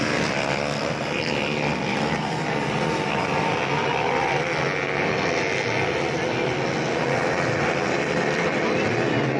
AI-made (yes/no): no